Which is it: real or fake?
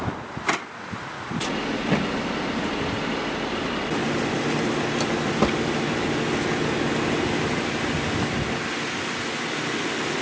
real